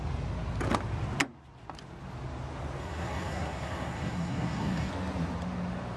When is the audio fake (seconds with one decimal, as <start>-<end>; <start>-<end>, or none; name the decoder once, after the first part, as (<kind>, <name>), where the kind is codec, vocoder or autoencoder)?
2.8-4.9 (codec, SNAC)